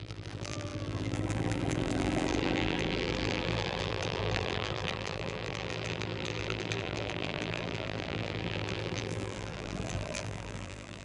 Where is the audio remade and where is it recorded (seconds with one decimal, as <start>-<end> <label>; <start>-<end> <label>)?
0.0-11.0 remade